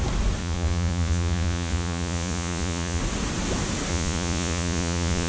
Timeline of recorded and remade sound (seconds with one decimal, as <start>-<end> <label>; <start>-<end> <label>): 0.0-0.4 recorded; 0.4-3.0 remade; 3.0-3.9 recorded; 3.9-5.3 remade